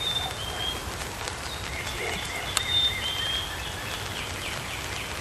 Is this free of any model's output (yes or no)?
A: yes